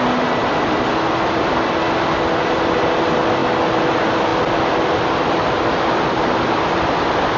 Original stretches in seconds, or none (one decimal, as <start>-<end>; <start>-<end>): 0.0-7.4